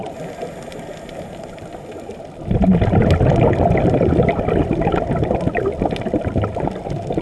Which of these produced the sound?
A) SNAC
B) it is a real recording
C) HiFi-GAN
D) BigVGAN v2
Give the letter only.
B